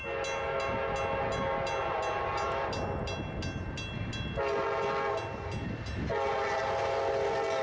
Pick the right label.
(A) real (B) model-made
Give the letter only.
A